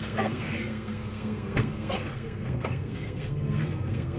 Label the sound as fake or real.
fake